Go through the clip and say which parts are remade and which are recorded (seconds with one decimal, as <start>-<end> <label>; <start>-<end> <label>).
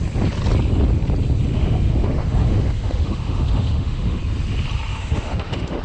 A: 0.0-1.5 recorded; 1.5-4.2 remade; 4.2-4.9 recorded; 4.9-5.8 remade